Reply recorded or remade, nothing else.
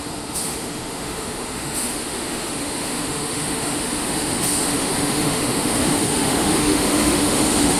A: remade